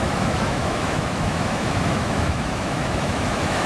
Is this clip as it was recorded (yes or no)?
no